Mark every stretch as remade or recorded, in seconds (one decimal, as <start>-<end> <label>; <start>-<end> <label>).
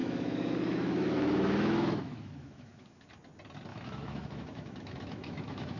0.0-3.1 remade; 3.1-3.7 recorded; 3.7-5.8 remade